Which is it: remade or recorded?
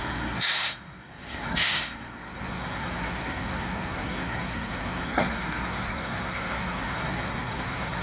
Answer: remade